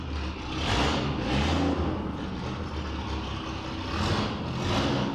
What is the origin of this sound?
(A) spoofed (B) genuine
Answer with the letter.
B